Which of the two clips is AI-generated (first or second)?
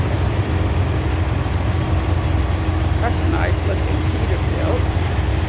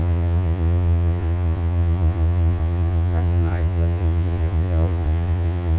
second